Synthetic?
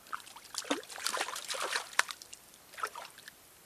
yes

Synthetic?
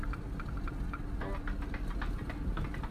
no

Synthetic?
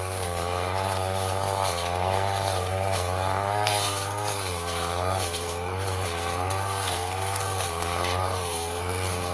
yes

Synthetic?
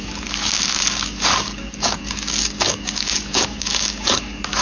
yes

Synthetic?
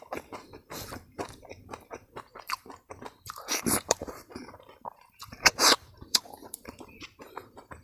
yes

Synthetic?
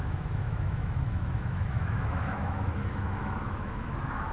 yes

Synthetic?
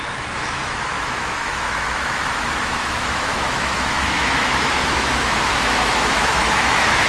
yes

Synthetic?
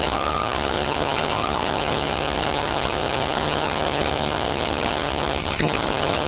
yes